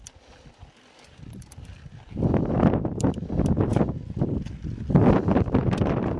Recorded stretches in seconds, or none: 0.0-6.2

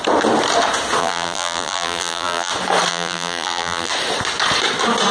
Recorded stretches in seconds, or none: 0.0-1.0; 2.5-2.9; 3.9-5.1

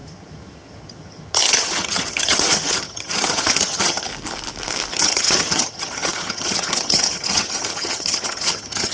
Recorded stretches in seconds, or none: 4.1-4.9

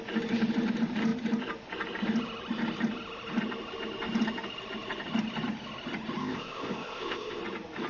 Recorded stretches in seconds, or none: 0.0-6.2; 7.4-7.9

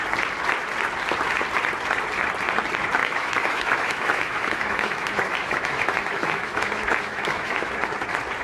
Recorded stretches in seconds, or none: 0.0-3.0; 7.7-8.4